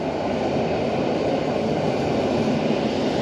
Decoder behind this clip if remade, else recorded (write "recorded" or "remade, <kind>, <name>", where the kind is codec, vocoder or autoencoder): recorded